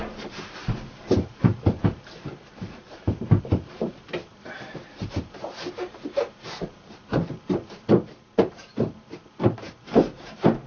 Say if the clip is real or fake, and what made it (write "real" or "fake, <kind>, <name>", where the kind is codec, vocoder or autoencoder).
fake, vocoder, BigVGAN v2